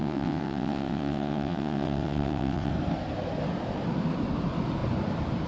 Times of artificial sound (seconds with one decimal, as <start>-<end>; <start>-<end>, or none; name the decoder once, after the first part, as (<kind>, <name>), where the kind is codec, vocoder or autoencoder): 0.0-2.7 (vocoder, WaveNeXt)